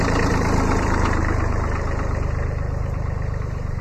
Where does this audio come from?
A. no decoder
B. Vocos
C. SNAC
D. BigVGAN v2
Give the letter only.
D